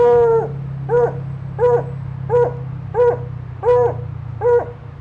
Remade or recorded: recorded